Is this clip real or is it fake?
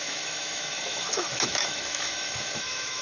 fake